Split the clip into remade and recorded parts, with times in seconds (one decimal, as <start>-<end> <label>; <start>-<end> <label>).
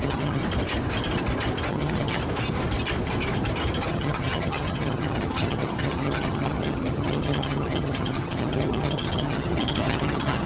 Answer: 0.0-0.4 remade; 0.4-1.7 recorded; 1.7-2.2 remade; 2.2-3.9 recorded; 3.9-10.5 remade